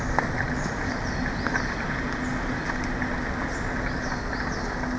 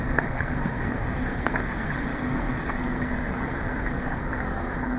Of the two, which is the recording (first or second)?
first